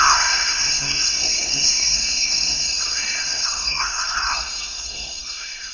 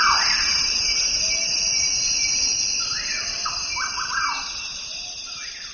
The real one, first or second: second